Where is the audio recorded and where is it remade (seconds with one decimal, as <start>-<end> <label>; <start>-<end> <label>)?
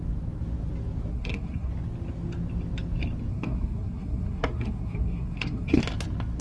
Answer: 0.0-1.1 recorded; 1.1-1.7 remade; 1.7-3.3 recorded; 3.3-5.8 remade; 5.8-6.4 recorded